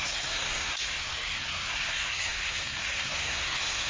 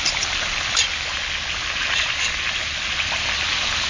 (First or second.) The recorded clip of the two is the second